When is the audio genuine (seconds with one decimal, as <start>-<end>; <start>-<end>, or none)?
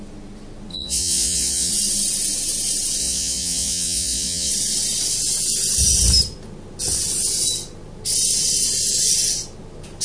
0.0-0.7; 1.7-3.0; 4.5-10.0